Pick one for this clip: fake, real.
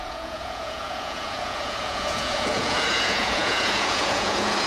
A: fake